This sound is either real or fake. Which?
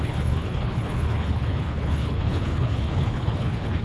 fake